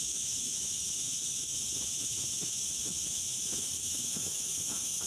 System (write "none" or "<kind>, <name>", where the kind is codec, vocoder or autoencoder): autoencoder, DAC-VAE